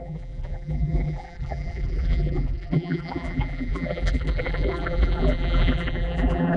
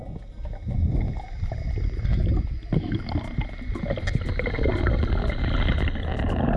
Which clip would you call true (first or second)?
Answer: second